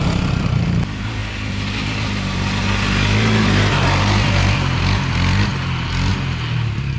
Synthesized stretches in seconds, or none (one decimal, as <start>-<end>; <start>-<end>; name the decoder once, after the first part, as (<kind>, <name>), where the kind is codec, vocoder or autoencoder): none